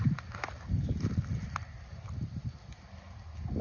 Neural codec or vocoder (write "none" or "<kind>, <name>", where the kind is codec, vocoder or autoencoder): none